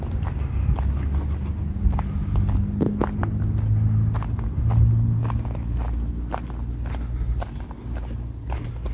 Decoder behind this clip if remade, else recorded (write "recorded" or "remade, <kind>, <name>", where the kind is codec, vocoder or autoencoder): recorded